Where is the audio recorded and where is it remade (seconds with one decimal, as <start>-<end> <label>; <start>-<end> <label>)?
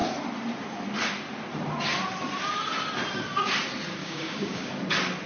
0.0-4.0 recorded; 4.0-4.7 remade; 4.7-5.3 recorded